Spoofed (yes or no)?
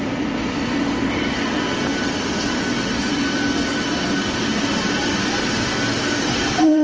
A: yes